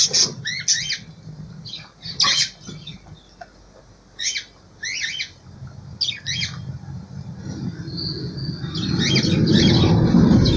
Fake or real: real